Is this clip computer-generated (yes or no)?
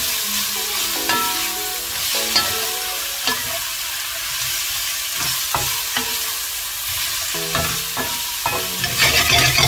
no